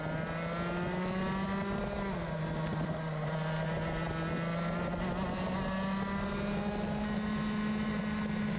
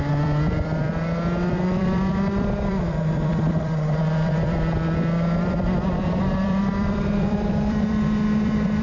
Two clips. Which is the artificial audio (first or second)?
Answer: second